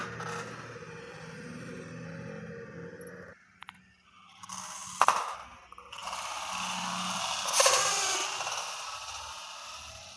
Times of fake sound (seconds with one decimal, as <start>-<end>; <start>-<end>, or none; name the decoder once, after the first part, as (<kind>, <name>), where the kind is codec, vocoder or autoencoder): none